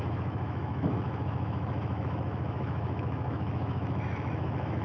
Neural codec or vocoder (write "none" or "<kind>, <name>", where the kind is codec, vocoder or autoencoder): autoencoder, DAC-VAE